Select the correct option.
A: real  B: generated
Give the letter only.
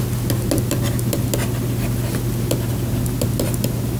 A